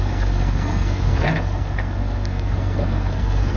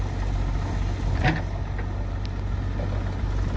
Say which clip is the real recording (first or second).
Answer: second